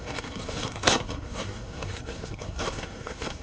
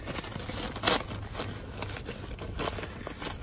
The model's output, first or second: first